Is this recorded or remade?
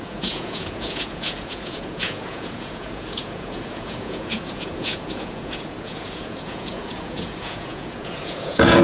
remade